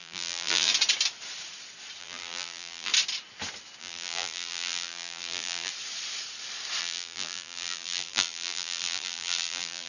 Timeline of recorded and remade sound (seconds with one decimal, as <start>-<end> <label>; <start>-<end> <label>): 0.0-0.7 remade; 0.7-2.0 recorded; 2.0-2.9 remade; 2.9-3.8 recorded; 3.8-5.7 remade; 5.7-6.8 recorded; 6.8-9.9 remade